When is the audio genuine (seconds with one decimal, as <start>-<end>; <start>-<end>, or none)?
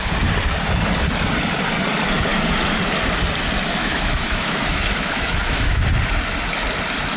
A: 0.0-3.8; 5.8-7.2